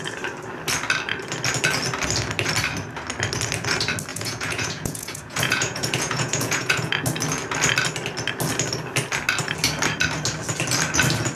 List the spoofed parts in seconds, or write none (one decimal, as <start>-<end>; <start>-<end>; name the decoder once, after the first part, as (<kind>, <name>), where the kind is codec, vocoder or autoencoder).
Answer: 4.1-6.9 (vocoder, Vocos)